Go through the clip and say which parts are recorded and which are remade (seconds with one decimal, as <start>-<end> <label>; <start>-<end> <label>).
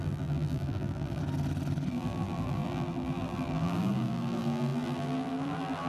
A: 0.0-1.2 remade; 1.2-1.9 recorded; 1.9-5.9 remade